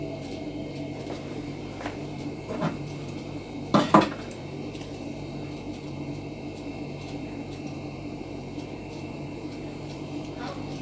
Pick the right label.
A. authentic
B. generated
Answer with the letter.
B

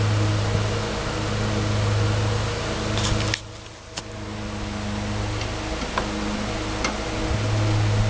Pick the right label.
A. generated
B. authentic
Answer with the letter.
B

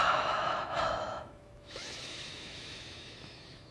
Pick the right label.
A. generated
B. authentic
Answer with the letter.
A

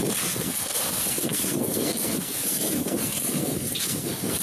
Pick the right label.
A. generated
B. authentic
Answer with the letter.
A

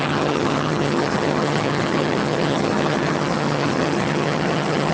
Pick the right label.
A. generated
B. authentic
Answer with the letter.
A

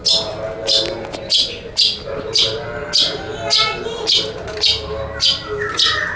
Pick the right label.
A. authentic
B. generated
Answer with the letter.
A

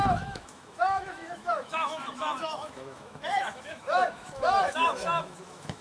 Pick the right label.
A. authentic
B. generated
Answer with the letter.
B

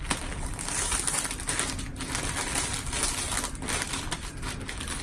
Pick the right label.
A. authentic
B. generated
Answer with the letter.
A